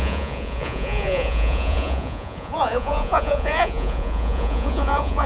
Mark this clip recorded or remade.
remade